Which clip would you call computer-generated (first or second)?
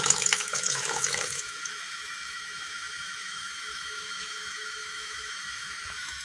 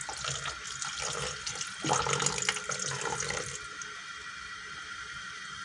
first